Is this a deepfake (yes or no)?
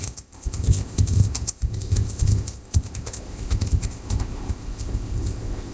yes